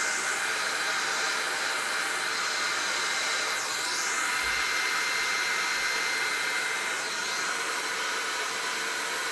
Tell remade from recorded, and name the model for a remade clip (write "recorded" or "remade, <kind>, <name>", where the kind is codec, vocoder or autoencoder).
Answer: recorded